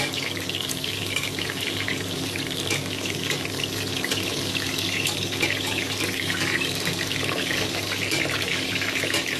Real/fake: fake